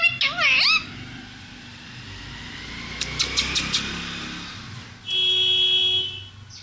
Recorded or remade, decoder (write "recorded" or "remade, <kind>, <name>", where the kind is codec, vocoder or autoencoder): recorded